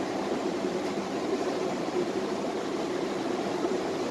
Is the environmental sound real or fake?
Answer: fake